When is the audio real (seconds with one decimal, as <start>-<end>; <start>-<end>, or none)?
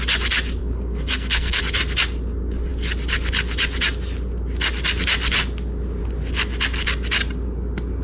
0.0-0.6; 1.6-8.0